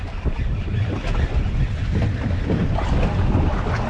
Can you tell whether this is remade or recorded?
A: recorded